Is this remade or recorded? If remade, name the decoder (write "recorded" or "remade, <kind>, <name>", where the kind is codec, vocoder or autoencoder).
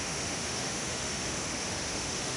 remade, autoencoder, DAC-VAE